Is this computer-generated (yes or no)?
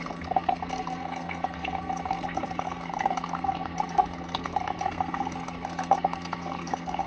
yes